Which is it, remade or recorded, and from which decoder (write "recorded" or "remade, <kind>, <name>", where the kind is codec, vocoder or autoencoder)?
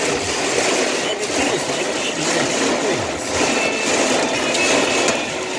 recorded